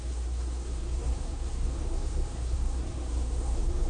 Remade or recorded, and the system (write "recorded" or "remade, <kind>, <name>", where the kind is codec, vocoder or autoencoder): remade, codec, SNAC